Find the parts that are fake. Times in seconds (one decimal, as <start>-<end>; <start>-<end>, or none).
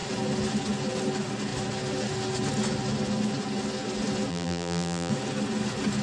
4.3-5.1